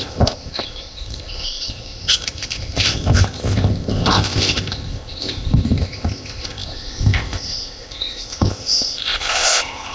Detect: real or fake fake